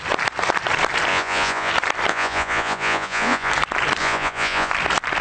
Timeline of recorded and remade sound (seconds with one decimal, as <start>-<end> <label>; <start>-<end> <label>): 0.0-1.1 recorded; 1.1-1.7 remade; 1.7-2.1 recorded; 2.1-3.5 remade; 3.5-4.0 recorded; 4.0-4.7 remade; 4.7-5.2 recorded